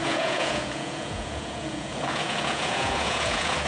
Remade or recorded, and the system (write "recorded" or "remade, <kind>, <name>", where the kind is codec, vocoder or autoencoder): remade, vocoder, Vocos